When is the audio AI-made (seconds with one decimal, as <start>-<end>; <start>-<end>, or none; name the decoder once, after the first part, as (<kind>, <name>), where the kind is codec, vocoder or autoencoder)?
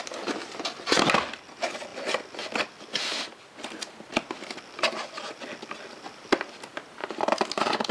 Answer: 7.0-7.9 (vocoder, BigVGAN v2)